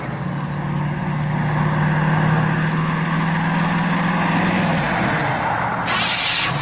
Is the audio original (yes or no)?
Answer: yes